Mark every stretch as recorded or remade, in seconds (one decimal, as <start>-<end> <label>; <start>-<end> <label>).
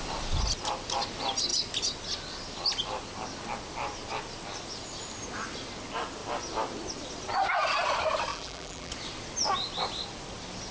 0.0-8.3 recorded; 8.3-8.9 remade; 8.9-10.7 recorded